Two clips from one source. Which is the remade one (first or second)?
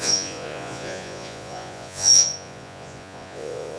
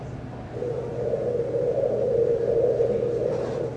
first